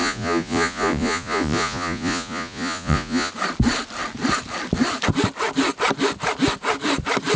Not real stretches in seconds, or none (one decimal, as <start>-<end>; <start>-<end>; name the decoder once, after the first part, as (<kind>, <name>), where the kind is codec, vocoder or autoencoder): 0.0-3.3 (vocoder, Vocos)